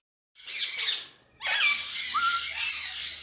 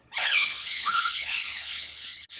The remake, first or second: second